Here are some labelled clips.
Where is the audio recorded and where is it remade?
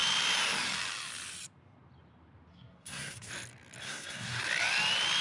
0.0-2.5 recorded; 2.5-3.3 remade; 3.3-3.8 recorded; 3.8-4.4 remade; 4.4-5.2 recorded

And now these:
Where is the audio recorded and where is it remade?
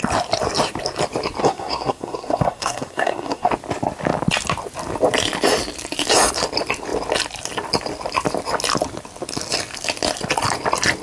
0.0-1.4 recorded; 1.4-3.5 remade; 3.5-11.0 recorded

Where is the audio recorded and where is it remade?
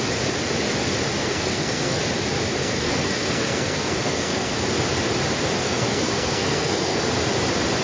0.0-1.2 recorded; 1.2-2.0 remade; 2.0-2.6 recorded; 2.6-4.5 remade; 4.5-5.6 recorded; 5.6-7.0 remade; 7.0-7.8 recorded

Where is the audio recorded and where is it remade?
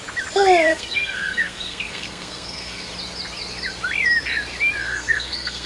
0.0-0.7 recorded; 0.7-2.9 remade; 2.9-4.8 recorded; 4.8-5.7 remade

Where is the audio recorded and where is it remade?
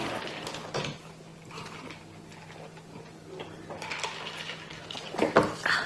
0.0-5.9 recorded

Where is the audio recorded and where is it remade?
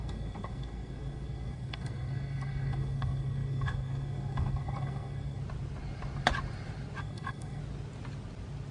0.0-5.4 remade; 5.4-7.0 recorded; 7.0-7.6 remade; 7.6-8.7 recorded